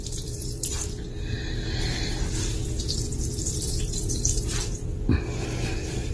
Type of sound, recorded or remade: remade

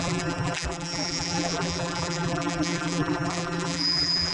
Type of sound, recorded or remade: remade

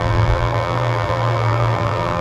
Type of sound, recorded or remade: remade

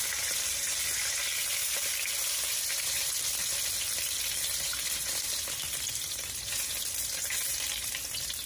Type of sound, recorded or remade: remade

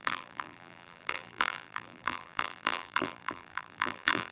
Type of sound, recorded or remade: remade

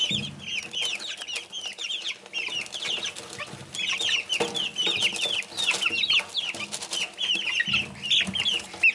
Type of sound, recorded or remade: recorded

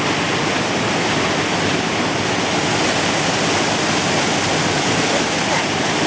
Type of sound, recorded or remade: recorded